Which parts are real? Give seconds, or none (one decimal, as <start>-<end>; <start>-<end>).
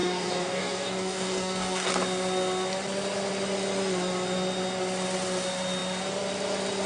1.9-6.9